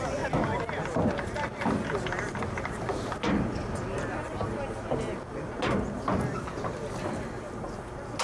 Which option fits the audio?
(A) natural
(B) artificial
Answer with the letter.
A